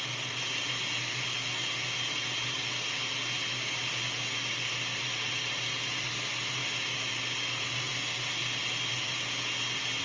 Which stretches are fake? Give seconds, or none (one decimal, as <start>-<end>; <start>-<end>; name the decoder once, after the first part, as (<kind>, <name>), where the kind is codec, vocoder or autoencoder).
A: none